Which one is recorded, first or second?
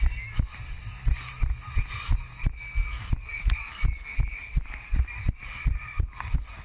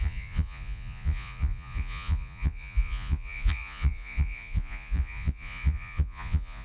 first